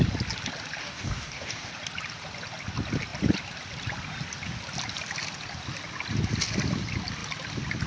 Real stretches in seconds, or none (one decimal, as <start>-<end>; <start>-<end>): 0.0-0.8; 1.7-7.9